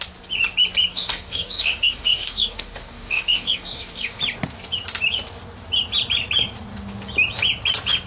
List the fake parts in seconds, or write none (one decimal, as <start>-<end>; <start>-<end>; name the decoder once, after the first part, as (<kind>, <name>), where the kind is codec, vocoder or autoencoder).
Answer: 0.9-4.2 (codec, DAC)